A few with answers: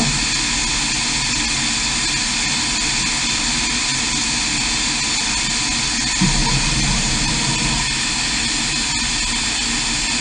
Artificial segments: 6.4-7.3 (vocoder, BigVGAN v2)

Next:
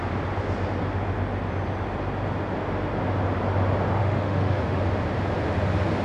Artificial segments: 4.0-4.8 (autoencoder, DAC-VAE)

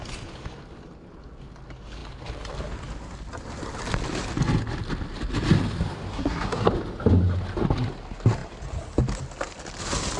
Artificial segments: 6.1-6.7 (codec, SNAC)

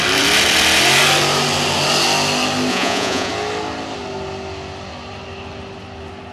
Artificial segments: 2.7-3.3 (vocoder, Vocos)

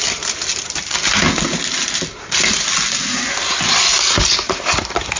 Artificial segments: none

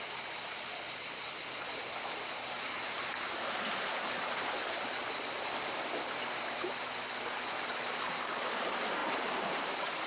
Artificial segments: none

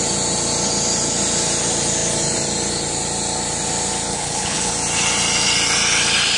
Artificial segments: 4.1-4.7 (codec, HILCodec)